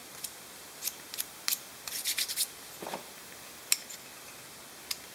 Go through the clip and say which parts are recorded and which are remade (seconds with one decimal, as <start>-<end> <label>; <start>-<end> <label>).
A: 0.0-3.1 remade; 3.1-4.1 recorded; 4.1-4.6 remade; 4.6-5.1 recorded